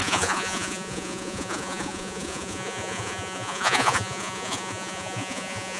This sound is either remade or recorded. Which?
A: remade